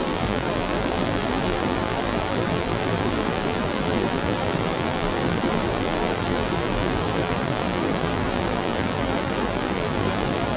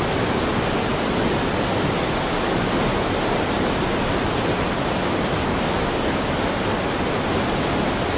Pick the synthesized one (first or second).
first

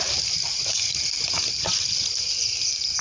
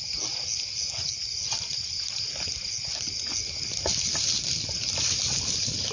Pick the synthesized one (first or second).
first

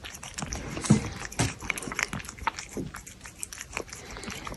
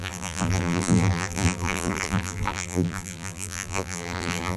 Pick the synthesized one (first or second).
second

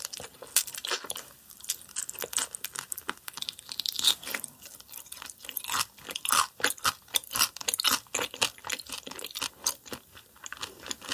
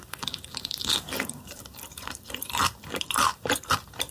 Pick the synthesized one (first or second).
second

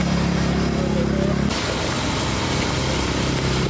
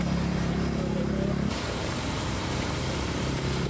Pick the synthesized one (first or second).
second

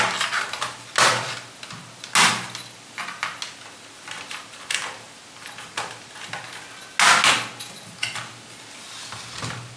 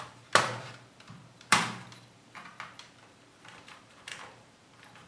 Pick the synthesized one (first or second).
second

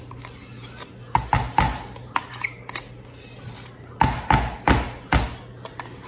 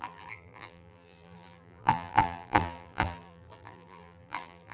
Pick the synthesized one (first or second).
second